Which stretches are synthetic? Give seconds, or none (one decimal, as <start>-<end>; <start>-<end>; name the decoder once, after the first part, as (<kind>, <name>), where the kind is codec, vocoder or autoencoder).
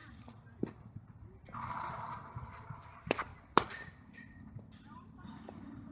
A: 1.7-5.9 (vocoder, BigVGAN v2)